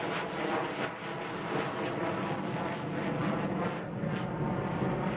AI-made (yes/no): no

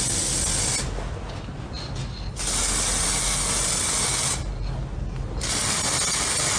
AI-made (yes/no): no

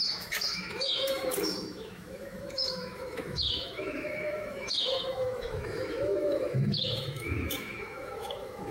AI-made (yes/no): yes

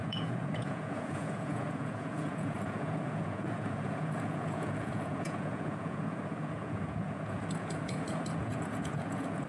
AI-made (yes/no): yes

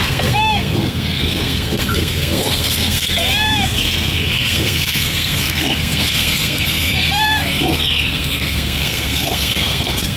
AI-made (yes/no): yes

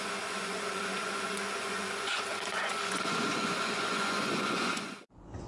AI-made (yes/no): yes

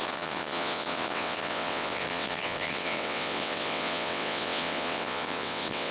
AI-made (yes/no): yes